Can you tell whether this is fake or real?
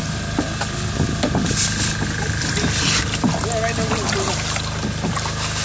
real